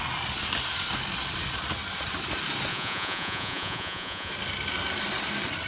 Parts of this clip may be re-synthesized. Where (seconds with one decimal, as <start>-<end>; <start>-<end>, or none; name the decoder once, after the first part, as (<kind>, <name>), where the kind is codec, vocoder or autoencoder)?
2.7-4.3 (vocoder, Vocos)

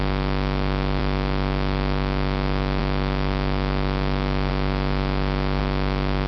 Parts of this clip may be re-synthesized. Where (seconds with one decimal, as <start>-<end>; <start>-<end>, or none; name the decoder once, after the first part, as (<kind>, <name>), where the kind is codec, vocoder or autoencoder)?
0.0-4.5 (autoencoder, DAC-VAE); 5.6-6.3

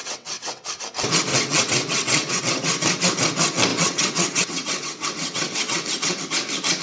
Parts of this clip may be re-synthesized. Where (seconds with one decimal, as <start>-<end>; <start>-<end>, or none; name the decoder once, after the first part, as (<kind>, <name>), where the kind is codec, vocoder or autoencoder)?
0.0-0.8 (vocoder, WaveNeXt); 1.3-2.4; 3.7-6.2

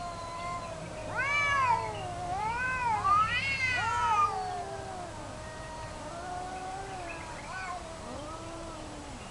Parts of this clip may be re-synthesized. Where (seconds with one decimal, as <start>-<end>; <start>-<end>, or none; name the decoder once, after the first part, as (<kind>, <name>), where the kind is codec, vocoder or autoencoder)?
0.0-1.0 (vocoder, BigVGAN v2); 2.3-9.3

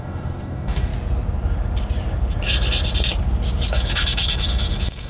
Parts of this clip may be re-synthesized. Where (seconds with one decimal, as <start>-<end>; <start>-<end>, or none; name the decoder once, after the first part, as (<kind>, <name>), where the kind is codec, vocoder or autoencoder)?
0.0-0.9 (autoencoder, DAC-VAE); 3.7-5.1

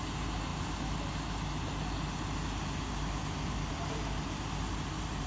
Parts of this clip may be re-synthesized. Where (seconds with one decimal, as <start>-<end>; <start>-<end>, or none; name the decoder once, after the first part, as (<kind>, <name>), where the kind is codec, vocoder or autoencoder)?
none

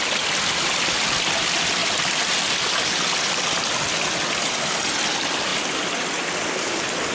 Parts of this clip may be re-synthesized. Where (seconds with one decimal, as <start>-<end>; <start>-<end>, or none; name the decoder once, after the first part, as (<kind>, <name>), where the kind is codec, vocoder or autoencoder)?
none

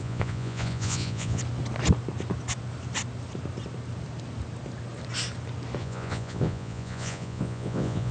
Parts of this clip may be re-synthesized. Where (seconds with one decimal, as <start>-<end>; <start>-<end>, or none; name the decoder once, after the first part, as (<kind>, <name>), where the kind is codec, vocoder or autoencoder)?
0.0-1.4 (vocoder, Vocos); 5.8-8.1